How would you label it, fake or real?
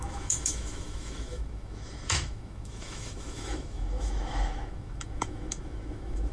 fake